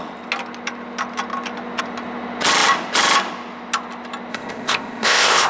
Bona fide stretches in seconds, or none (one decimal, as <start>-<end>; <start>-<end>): 0.0-4.3